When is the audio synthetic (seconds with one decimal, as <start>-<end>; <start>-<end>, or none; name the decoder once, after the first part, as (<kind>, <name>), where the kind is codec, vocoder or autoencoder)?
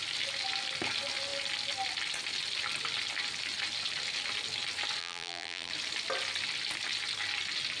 5.0-5.7 (vocoder, BigVGAN v2)